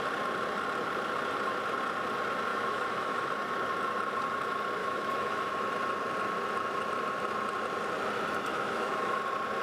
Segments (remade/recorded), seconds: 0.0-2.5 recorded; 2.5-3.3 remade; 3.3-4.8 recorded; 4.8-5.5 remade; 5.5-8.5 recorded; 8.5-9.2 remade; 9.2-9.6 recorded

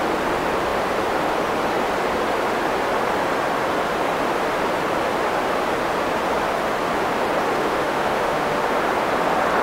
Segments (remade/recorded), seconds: 0.0-7.5 recorded; 7.5-8.7 remade; 8.7-9.6 recorded

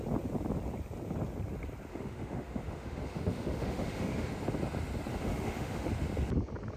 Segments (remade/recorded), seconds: 0.0-1.9 recorded; 1.9-4.3 remade; 4.3-5.1 recorded; 5.1-5.9 remade; 5.9-6.8 recorded

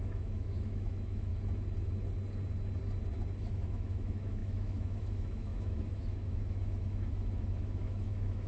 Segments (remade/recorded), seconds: 0.0-1.3 remade; 1.3-3.5 recorded; 3.5-8.5 remade

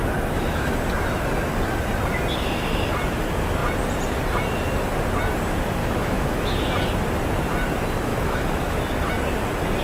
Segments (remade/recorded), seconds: 0.0-0.7 remade; 0.7-5.8 recorded; 5.8-6.7 remade; 6.7-8.1 recorded; 8.1-8.8 remade; 8.8-9.8 recorded

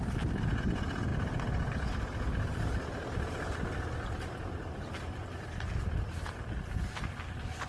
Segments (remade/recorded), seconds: 0.0-7.7 recorded